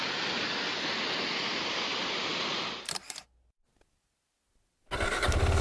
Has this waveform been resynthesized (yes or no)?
no